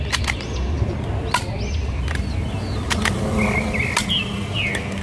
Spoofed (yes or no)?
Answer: no